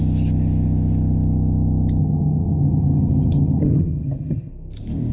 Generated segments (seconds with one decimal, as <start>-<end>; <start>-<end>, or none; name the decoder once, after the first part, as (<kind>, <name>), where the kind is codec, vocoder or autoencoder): 2.0-4.5 (vocoder, HiFi-GAN)